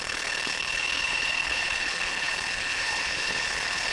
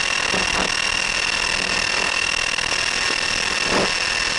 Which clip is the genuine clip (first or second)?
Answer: second